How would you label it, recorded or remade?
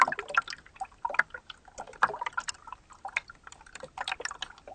recorded